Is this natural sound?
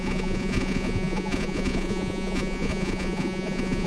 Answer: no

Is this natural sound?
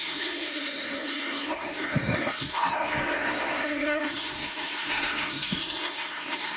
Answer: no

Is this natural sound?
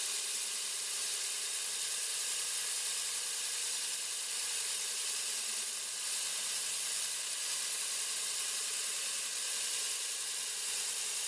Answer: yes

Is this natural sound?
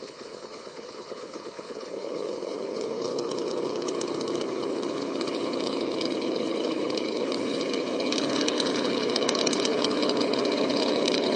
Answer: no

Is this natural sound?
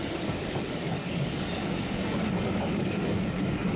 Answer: no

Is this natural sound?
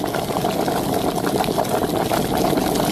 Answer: yes